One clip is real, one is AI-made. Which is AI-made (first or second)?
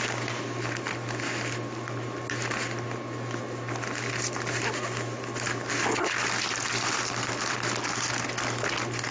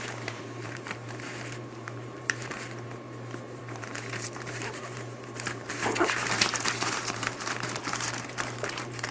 second